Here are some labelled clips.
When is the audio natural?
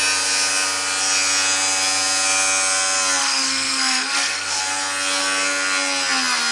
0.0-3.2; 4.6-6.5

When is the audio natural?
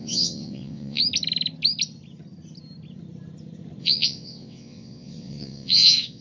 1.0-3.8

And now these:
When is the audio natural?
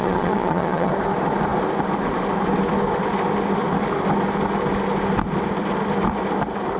0.9-6.8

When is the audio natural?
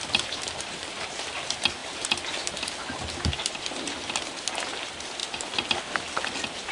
0.0-6.7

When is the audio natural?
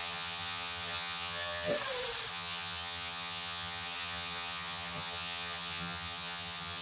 1.7-2.3